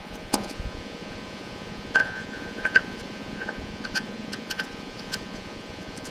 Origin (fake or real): fake